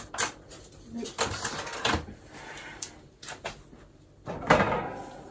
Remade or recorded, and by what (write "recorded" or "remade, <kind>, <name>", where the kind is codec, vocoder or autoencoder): recorded